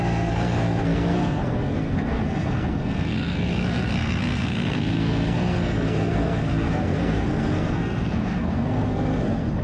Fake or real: fake